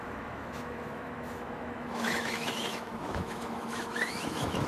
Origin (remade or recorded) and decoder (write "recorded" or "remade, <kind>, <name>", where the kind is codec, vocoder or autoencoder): remade, autoencoder, DAC-VAE